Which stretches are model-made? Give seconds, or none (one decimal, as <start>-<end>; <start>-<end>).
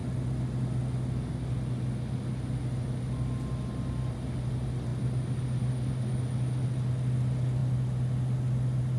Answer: none